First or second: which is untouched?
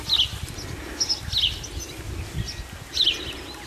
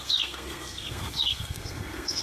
first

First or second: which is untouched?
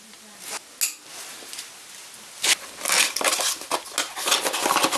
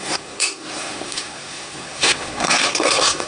first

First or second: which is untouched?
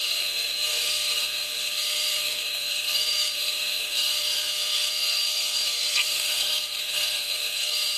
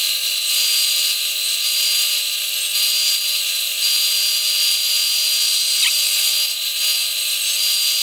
second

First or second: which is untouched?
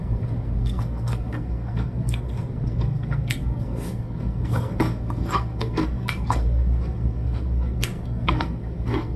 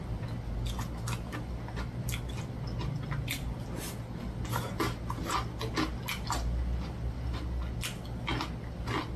second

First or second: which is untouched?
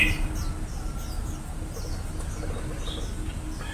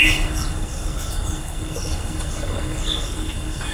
first